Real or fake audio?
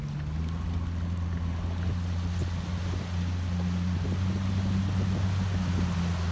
real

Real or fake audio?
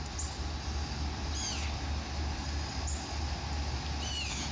real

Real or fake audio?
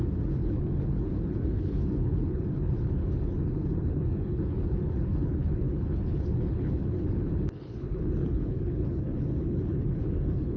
fake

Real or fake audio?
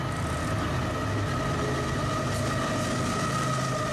real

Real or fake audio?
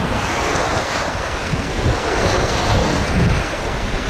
fake